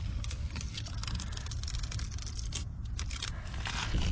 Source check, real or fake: real